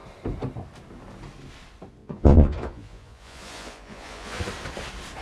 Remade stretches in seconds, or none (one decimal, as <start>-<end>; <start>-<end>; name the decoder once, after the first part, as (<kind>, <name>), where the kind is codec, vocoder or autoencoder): 2.0-4.4 (vocoder, Vocos)